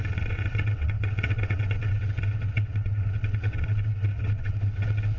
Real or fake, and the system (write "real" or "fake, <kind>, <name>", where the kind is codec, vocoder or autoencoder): fake, vocoder, WaveNeXt